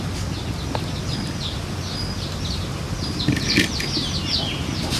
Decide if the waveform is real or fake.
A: real